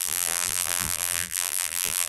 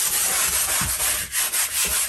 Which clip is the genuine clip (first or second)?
second